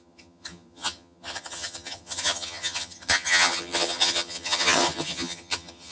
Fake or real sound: fake